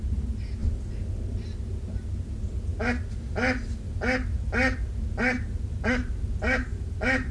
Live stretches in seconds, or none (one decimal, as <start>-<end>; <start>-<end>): 0.0-7.3